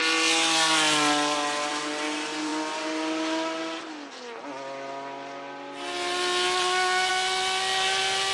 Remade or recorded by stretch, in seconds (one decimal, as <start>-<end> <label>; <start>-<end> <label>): 0.0-8.3 recorded